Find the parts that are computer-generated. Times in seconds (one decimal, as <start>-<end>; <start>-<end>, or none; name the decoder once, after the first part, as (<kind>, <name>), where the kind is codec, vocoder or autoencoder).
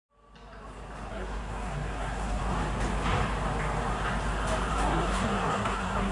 1.1-2.4 (codec, SNAC); 4.7-6.1